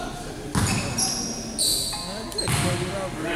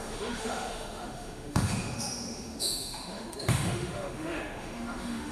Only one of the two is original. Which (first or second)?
first